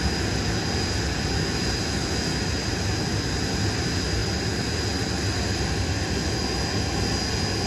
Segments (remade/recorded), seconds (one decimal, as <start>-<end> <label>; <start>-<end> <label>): 0.0-7.7 recorded